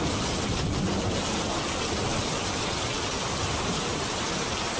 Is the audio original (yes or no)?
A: yes